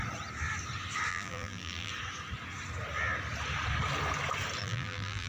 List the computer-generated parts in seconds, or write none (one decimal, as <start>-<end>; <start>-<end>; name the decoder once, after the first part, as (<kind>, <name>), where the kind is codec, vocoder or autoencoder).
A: 1.1-1.9 (vocoder, BigVGAN v2); 4.6-5.3